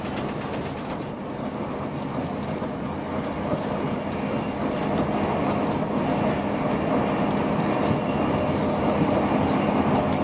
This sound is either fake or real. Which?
real